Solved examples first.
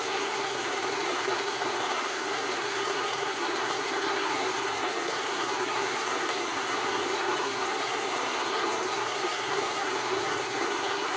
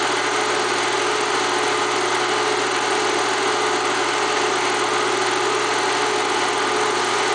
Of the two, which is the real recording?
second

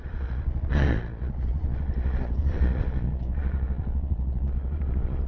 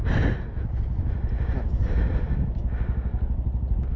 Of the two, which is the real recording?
second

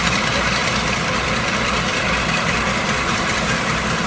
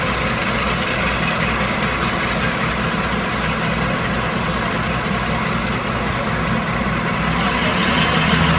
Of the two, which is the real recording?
second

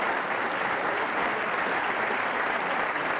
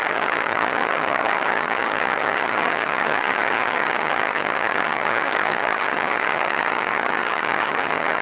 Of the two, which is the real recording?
first